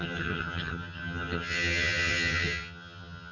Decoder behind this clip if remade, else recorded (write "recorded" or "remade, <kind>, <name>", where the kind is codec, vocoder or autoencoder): remade, vocoder, HiFi-GAN